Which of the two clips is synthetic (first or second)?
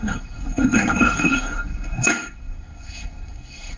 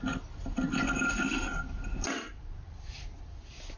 first